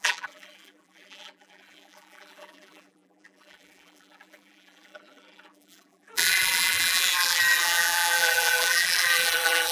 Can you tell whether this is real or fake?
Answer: fake